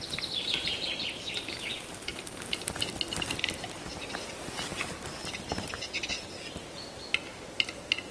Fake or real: real